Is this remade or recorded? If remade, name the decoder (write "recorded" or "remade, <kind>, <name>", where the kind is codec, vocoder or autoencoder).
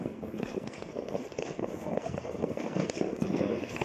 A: remade, codec, SNAC